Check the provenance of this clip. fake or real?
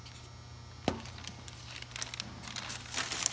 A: real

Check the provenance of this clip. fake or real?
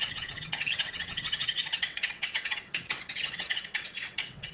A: fake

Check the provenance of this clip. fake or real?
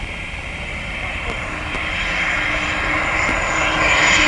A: fake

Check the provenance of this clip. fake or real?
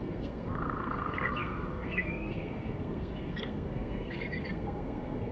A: fake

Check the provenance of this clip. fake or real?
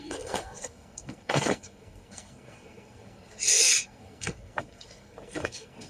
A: fake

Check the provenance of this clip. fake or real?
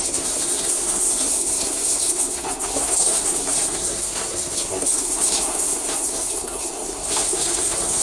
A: fake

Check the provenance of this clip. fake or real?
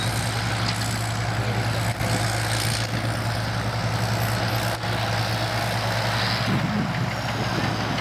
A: real